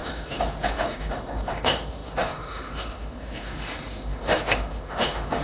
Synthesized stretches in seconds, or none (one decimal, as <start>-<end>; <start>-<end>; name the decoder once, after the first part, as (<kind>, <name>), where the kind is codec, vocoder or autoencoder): 0.0-5.4 (autoencoder, DAC-VAE)